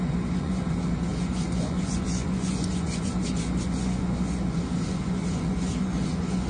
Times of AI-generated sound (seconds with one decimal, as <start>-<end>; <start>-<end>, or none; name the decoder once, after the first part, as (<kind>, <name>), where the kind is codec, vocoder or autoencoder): 0.0-6.5 (vocoder, Vocos)